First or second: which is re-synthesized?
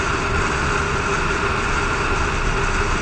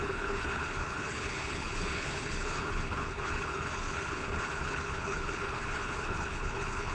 second